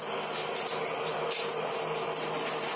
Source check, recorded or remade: recorded